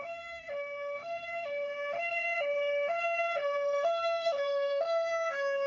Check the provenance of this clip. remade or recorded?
remade